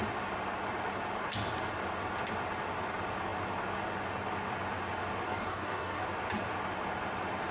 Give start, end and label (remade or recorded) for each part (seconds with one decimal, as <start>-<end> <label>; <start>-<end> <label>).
0.0-5.3 recorded; 5.3-6.0 remade; 6.0-7.5 recorded